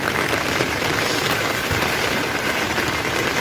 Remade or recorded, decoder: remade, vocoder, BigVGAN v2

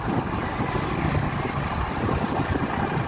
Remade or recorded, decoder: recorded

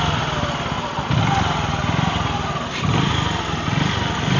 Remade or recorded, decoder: recorded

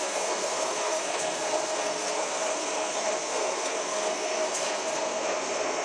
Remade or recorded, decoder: remade, codec, SNAC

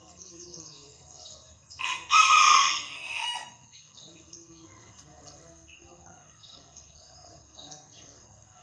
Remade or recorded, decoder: remade, codec, SNAC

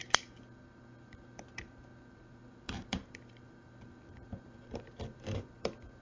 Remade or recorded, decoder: remade, vocoder, BigVGAN v2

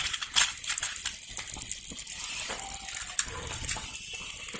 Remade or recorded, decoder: recorded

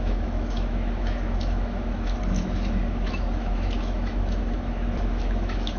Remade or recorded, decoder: remade, autoencoder, DAC-VAE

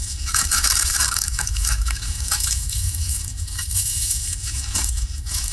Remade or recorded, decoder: remade, autoencoder, DAC-VAE